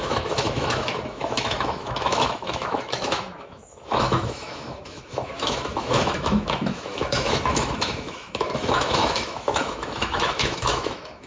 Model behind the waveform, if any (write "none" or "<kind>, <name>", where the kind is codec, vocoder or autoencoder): autoencoder, DAC-VAE